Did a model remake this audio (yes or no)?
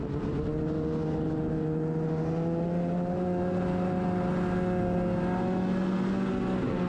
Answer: no